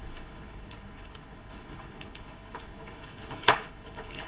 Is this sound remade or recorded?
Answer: remade